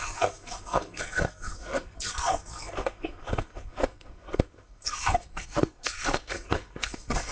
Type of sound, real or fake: fake